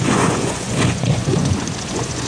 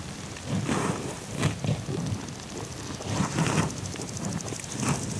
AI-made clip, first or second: first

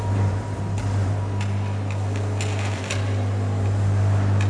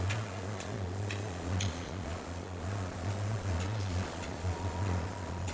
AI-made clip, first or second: second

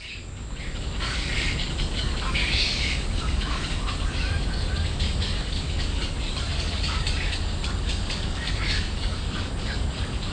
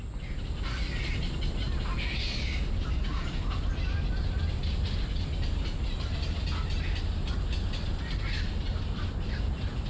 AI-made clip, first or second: first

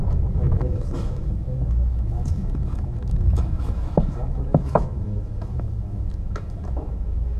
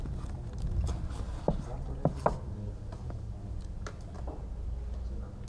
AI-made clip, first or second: first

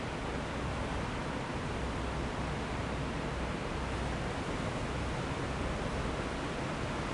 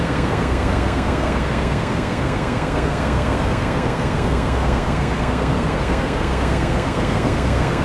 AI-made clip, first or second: second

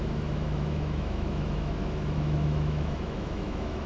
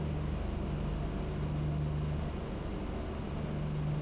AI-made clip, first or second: first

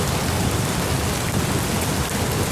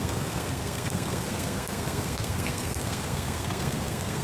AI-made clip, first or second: second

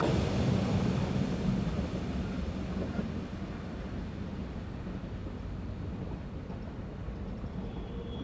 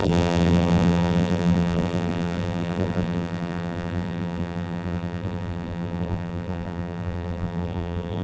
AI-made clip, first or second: second